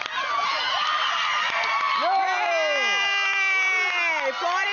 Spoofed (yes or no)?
no